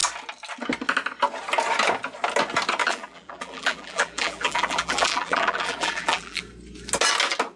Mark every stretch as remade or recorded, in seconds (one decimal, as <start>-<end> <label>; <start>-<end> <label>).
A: 0.0-2.8 recorded; 2.8-6.4 remade; 6.4-7.6 recorded